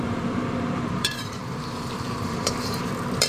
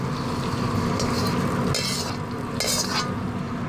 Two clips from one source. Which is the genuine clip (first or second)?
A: second